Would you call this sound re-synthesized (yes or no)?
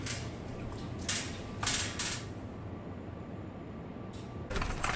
no